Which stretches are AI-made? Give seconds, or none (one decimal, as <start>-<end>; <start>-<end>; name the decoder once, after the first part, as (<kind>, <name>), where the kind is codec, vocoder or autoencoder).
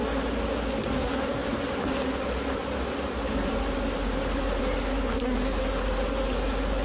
none